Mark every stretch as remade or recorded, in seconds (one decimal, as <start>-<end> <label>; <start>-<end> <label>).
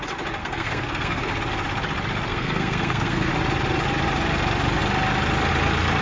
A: 0.0-0.4 recorded; 0.4-1.3 remade; 1.3-2.3 recorded; 2.3-3.3 remade; 3.3-6.0 recorded